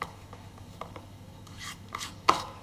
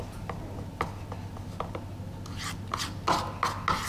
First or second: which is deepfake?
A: first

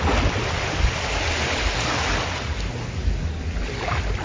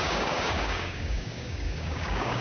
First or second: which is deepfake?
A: second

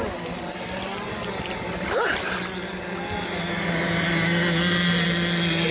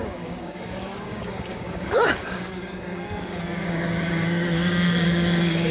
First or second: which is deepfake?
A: second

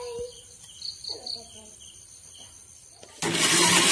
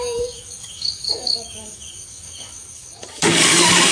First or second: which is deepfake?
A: second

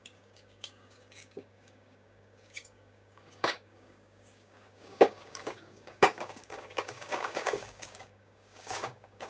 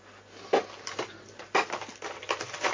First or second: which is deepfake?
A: first